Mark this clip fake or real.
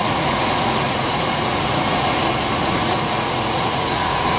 fake